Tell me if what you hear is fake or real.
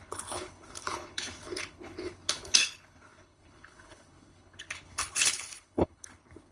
fake